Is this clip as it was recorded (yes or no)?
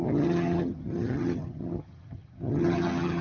no